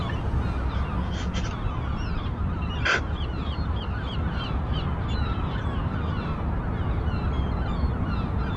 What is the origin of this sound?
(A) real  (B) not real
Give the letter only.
A